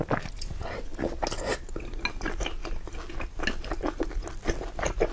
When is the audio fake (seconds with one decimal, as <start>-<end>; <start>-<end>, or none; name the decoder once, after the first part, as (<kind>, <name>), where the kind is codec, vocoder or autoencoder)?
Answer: none